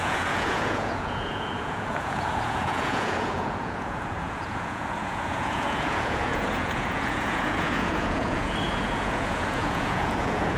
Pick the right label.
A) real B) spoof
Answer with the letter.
B